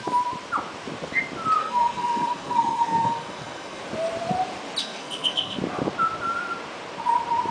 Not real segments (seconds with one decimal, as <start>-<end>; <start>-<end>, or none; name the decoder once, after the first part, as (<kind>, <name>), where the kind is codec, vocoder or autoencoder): 1.6-3.8 (codec, SNAC); 4.8-5.6